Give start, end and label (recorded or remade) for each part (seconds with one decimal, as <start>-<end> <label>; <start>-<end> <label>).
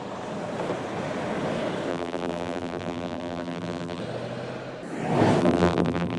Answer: 0.0-1.9 recorded; 1.9-4.0 remade; 4.0-5.4 recorded; 5.4-6.2 remade